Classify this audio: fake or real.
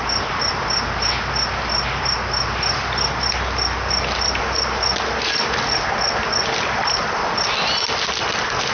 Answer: real